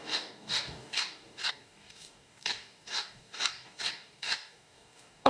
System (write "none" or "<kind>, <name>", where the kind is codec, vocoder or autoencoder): codec, DAC